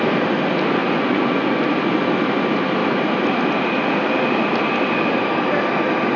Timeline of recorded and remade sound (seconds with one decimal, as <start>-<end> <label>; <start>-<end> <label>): 0.0-0.8 recorded; 0.8-1.7 remade; 1.7-6.2 recorded